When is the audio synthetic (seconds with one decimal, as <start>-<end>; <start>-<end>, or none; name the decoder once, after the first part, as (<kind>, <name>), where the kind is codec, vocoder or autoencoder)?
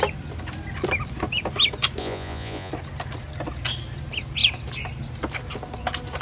2.0-2.7 (vocoder, Vocos)